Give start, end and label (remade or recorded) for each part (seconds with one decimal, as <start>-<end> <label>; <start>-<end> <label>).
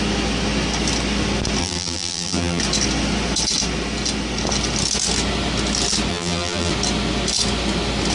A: 0.0-1.6 recorded; 1.6-2.6 remade; 2.6-6.1 recorded; 6.1-6.7 remade; 6.7-8.1 recorded